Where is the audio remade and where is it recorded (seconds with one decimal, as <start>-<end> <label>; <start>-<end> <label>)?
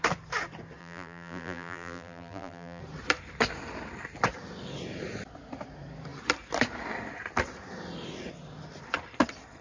0.0-0.8 recorded; 0.8-2.8 remade; 2.8-9.6 recorded